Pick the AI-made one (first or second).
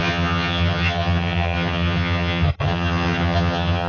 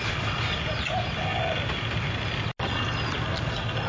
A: first